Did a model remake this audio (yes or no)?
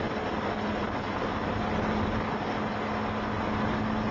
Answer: no